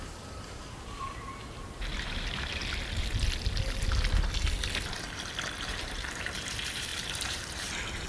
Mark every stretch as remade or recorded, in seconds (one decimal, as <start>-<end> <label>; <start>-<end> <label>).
0.0-2.6 remade; 2.6-5.6 recorded; 5.6-8.1 remade